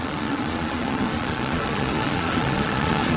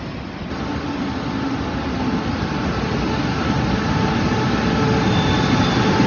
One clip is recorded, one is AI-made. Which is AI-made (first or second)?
first